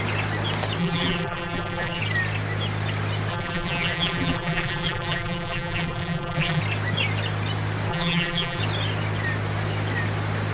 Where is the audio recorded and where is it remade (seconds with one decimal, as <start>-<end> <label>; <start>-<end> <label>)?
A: 0.0-0.8 recorded; 0.8-2.0 remade; 2.0-3.3 recorded; 3.3-6.6 remade; 6.6-7.9 recorded; 7.9-8.6 remade; 8.6-10.5 recorded